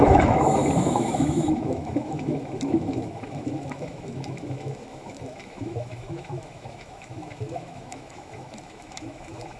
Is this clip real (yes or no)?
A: no